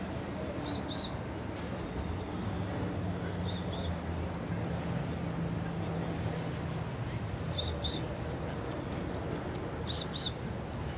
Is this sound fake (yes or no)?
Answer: no